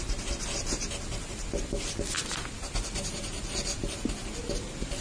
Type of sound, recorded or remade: recorded